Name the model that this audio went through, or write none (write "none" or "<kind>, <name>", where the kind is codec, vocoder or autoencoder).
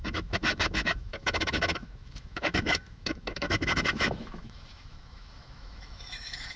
autoencoder, DAC-VAE